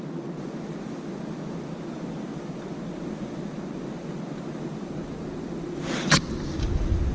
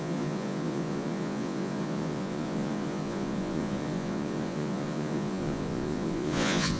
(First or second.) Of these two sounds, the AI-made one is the second